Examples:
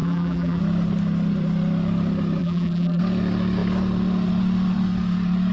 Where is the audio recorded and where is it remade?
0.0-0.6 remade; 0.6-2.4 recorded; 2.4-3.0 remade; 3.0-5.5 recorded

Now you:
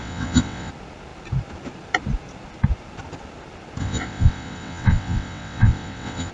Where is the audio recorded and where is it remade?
0.0-0.7 remade; 0.7-3.8 recorded; 3.8-6.3 remade

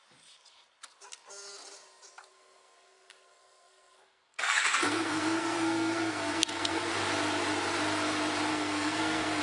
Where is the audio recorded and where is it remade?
0.0-2.3 recorded; 2.3-6.9 remade; 6.9-8.5 recorded; 8.5-9.4 remade

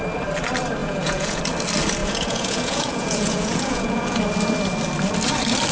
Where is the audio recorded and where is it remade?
0.0-0.8 recorded; 0.8-1.4 remade; 1.4-2.0 recorded; 2.0-4.2 remade; 4.2-5.7 recorded

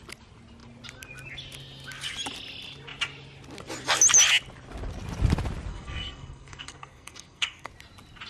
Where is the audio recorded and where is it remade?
0.0-5.7 recorded; 5.7-7.7 remade; 7.7-8.3 recorded

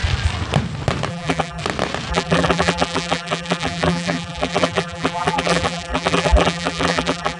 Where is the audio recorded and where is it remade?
0.0-1.1 recorded; 1.1-1.6 remade; 1.6-2.1 recorded; 2.1-7.4 remade

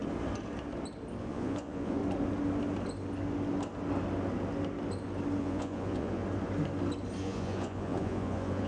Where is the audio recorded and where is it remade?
0.0-1.2 recorded; 1.2-2.0 remade; 2.0-5.4 recorded; 5.4-6.2 remade; 6.2-7.2 recorded; 7.2-8.7 remade